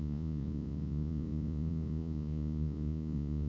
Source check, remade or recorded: remade